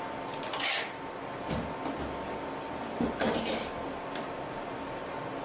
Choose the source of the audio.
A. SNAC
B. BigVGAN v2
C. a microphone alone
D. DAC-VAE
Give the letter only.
C